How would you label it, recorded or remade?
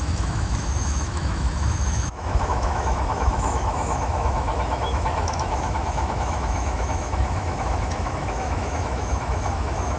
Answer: remade